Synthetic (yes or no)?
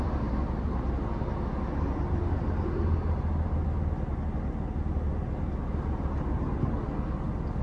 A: no